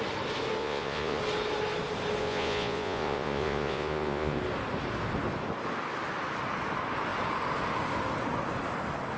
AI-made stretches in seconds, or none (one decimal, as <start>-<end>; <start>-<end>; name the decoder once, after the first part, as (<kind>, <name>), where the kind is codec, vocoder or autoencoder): 0.6-1.2 (vocoder, Vocos); 2.2-4.4